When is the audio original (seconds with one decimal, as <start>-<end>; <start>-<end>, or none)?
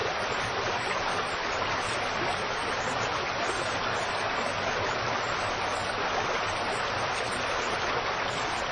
0.5-8.7